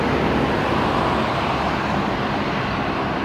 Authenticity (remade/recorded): recorded